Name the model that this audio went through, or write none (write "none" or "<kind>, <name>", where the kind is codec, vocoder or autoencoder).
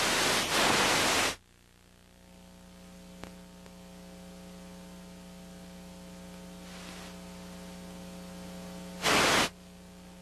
none